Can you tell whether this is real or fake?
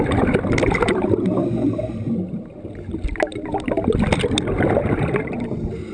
real